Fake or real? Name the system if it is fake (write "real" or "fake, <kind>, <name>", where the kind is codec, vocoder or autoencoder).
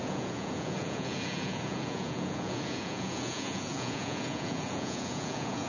fake, vocoder, Vocos